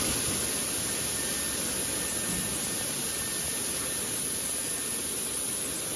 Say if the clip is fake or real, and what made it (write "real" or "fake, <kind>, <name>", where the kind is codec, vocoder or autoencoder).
real